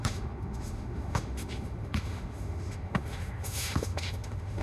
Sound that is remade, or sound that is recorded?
remade